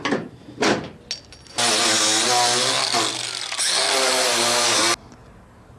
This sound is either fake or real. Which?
real